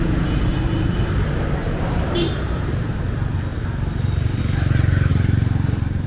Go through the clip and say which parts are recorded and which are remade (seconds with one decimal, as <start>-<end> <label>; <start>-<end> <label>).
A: 0.0-1.6 recorded; 1.6-3.0 remade; 3.0-5.1 recorded; 5.1-6.1 remade